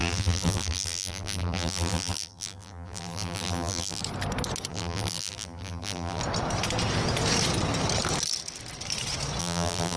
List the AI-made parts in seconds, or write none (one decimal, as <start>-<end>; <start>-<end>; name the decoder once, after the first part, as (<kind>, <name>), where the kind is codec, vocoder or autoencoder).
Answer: 0.0-4.0 (vocoder, BigVGAN v2); 4.7-6.2; 9.4-10.0